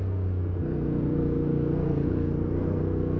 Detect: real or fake fake